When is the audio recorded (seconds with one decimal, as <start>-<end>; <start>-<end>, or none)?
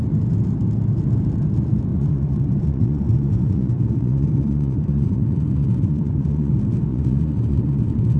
0.0-1.9; 6.5-6.9